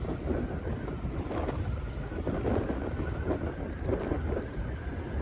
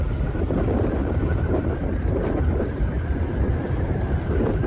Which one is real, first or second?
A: first